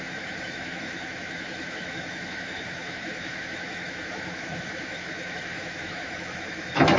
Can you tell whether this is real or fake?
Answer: fake